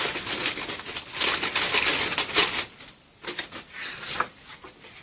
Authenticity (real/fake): real